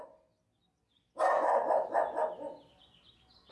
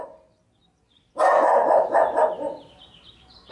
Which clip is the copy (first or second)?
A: second